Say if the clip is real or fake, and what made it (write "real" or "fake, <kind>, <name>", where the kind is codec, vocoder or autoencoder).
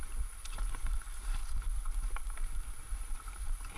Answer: fake, vocoder, BigVGAN v2